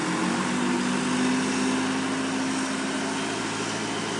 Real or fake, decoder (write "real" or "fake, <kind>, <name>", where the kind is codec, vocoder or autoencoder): real